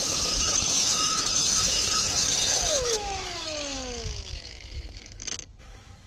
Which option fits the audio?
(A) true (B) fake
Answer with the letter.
B